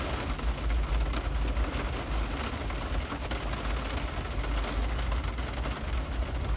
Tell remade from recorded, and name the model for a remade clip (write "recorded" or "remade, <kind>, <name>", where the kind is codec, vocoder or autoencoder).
recorded